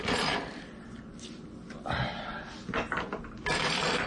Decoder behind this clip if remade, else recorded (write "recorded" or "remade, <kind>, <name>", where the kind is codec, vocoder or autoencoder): recorded